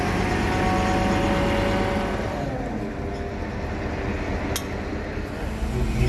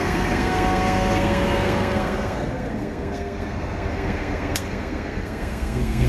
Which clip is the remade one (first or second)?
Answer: second